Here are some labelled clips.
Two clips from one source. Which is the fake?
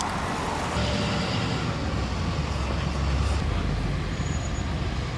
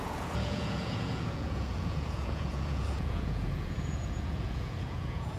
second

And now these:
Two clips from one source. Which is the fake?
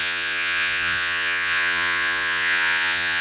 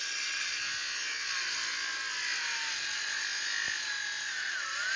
first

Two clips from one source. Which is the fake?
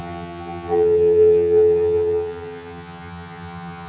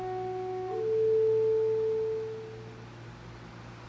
first